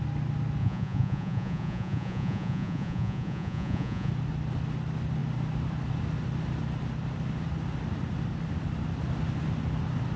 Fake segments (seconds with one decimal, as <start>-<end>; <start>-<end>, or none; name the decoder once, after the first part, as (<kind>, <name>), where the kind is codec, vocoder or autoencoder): 0.6-4.1 (vocoder, Vocos)